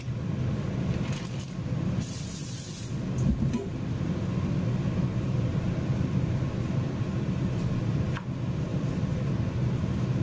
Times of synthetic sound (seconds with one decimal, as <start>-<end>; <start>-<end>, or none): 8.7-9.2